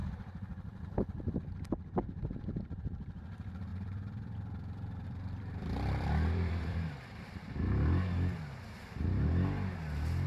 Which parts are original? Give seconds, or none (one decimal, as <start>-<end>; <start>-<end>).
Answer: 1.3-3.7; 7.5-10.3